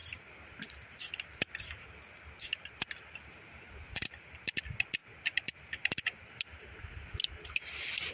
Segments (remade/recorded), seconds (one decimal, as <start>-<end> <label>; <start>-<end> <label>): 0.0-4.6 remade; 4.6-5.0 recorded; 5.0-8.1 remade